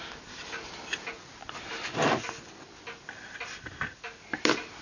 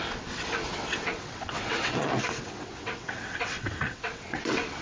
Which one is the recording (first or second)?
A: first